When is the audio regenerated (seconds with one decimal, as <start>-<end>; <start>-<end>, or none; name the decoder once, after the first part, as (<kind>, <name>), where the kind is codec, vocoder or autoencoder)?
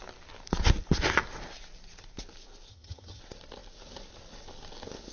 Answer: 2.7-3.2 (vocoder, HiFi-GAN)